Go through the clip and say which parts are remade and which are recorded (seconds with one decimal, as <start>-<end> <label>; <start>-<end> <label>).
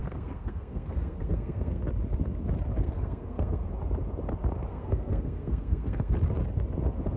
0.0-1.8 remade; 1.8-2.8 recorded; 2.8-3.7 remade; 3.7-4.7 recorded; 4.7-6.1 remade; 6.1-7.2 recorded